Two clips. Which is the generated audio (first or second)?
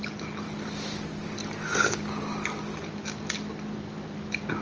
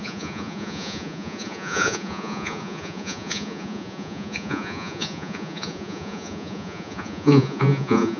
second